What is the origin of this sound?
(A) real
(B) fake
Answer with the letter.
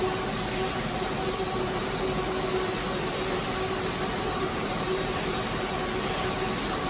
A